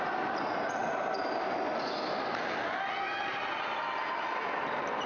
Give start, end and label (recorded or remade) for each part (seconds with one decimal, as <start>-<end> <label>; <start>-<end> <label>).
0.0-5.1 recorded